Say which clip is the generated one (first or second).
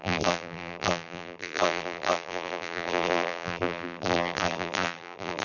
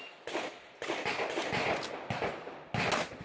first